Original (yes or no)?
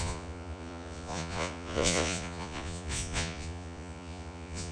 no